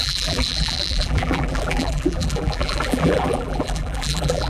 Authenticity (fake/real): fake